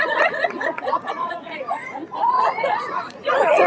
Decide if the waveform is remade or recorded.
remade